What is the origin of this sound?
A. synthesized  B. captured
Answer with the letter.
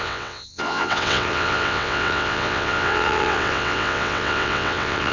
A